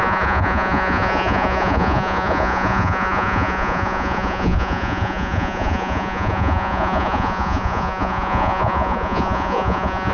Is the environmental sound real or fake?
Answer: fake